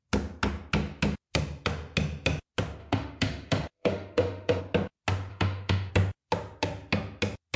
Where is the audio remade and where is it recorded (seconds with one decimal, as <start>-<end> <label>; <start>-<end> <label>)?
0.0-2.8 recorded; 2.8-4.6 remade; 4.6-5.3 recorded; 5.3-5.9 remade; 5.9-7.6 recorded

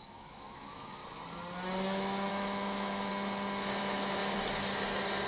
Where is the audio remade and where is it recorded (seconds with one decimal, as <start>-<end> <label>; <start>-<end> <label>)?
0.0-1.0 remade; 1.0-2.3 recorded; 2.3-3.1 remade; 3.1-3.8 recorded; 3.8-4.2 remade; 4.2-5.3 recorded

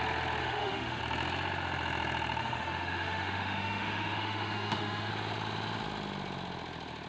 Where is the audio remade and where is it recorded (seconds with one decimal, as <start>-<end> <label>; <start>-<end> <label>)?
0.0-0.4 recorded; 0.4-1.0 remade; 1.0-2.4 recorded; 2.4-5.1 remade; 5.1-7.1 recorded

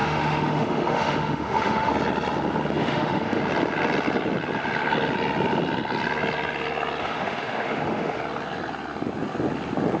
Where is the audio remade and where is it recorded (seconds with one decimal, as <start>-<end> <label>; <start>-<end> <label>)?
0.0-1.9 remade; 1.9-2.8 recorded; 2.8-3.4 remade; 3.4-7.0 recorded; 7.0-8.2 remade; 8.2-10.0 recorded